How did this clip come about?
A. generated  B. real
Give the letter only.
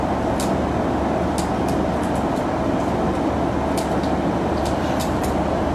B